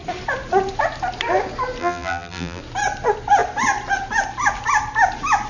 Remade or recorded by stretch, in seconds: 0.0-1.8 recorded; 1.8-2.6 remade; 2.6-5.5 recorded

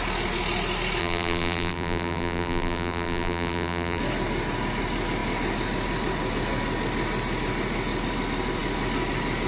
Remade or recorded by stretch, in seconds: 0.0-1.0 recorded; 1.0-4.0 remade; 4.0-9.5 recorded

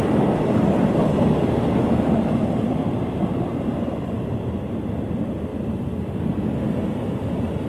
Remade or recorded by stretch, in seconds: 0.0-2.4 recorded; 2.4-4.9 remade; 4.9-7.7 recorded

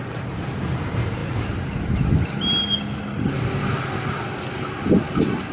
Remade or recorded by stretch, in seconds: 0.0-5.5 recorded